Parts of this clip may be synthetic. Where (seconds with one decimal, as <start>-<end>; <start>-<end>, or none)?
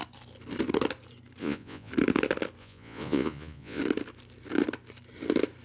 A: 1.4-1.9; 2.6-3.8